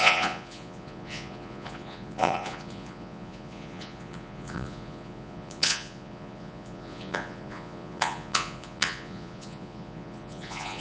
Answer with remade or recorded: remade